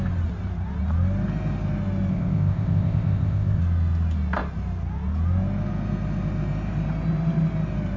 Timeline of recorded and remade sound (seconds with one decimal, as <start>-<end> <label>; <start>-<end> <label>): 0.0-2.1 recorded; 2.1-3.6 remade; 3.6-8.0 recorded

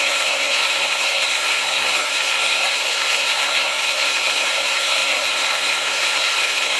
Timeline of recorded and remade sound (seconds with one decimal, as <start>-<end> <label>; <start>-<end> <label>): 0.0-6.8 remade